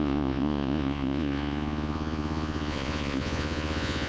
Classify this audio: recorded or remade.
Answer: remade